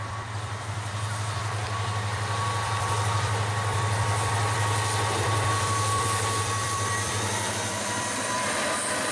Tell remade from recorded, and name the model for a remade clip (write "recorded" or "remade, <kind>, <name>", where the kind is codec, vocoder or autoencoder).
remade, vocoder, BigVGAN v2